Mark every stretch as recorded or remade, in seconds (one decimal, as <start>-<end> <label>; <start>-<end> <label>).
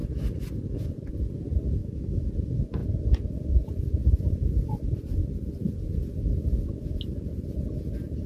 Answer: 0.0-1.8 recorded; 1.8-2.3 remade; 2.3-8.3 recorded